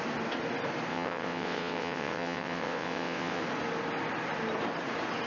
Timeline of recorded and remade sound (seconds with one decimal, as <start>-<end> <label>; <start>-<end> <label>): 0.0-0.9 recorded; 0.9-3.4 remade; 3.4-5.3 recorded